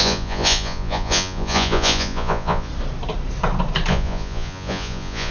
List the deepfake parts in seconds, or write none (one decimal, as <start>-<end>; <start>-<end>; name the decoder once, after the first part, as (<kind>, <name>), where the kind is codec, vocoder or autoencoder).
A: 0.0-2.7 (vocoder, Vocos); 3.9-5.3